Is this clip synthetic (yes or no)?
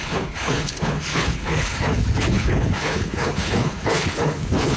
yes